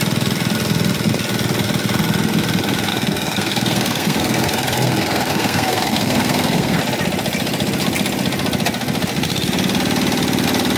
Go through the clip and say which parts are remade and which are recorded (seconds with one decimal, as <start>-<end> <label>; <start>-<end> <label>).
0.0-2.9 recorded; 2.9-6.8 remade; 6.8-10.8 recorded